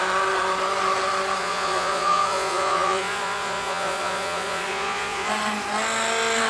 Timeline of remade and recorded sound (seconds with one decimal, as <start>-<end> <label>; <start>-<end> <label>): 0.0-1.4 recorded; 1.4-5.3 remade; 5.3-6.5 recorded